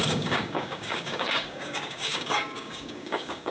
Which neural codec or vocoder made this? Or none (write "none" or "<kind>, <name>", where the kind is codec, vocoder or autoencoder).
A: codec, DAC